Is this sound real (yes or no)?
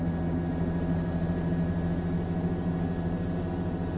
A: yes